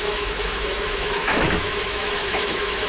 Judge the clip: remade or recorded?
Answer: remade